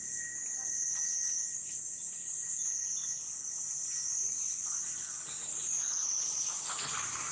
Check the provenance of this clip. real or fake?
real